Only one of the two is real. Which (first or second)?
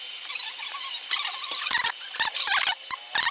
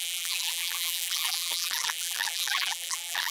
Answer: first